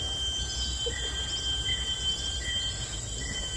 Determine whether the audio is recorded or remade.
recorded